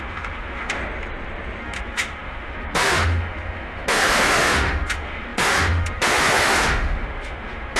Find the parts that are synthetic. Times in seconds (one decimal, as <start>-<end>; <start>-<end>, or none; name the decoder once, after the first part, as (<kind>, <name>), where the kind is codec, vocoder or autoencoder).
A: 0.0-0.8 (autoencoder, DAC-VAE); 1.6-7.8